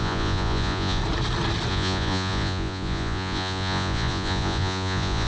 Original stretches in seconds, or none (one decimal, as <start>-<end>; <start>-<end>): 1.0-1.7